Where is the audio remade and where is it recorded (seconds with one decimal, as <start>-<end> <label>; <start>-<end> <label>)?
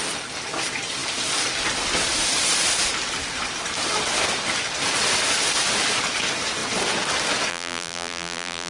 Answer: 0.0-7.5 recorded; 7.5-8.7 remade